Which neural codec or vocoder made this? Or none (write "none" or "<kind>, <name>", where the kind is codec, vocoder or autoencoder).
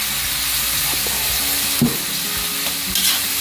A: none